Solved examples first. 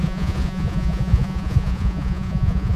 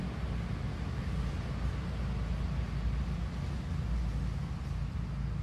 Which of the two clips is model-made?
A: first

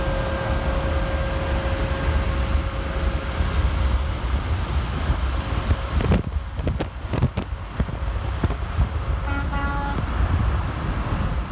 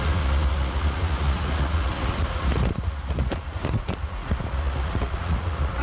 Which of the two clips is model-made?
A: second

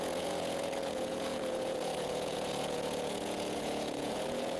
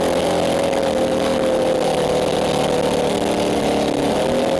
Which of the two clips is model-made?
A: first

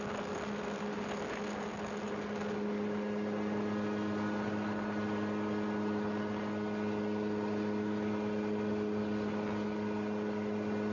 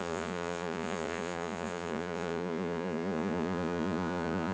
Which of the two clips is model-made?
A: second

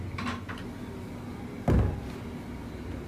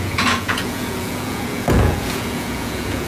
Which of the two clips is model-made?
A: second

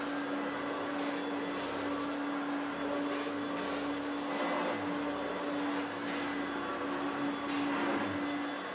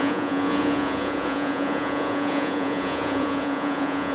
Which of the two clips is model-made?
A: second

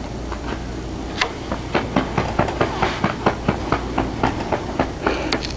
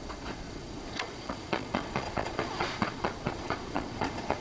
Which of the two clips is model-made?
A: second